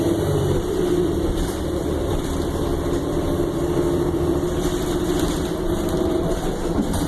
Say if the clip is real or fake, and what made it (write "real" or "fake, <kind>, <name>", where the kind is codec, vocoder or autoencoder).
fake, vocoder, BigVGAN v2